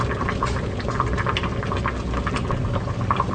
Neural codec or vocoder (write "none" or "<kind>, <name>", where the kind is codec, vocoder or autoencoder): none